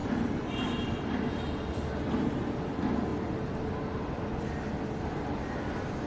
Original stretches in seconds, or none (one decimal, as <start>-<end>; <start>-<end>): 0.0-6.1